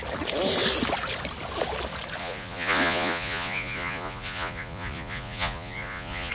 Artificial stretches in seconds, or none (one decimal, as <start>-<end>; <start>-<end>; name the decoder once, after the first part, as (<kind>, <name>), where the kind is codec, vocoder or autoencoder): 2.2-6.3 (vocoder, Vocos)